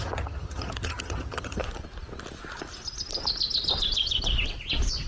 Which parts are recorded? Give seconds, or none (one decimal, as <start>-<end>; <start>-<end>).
1.6-5.1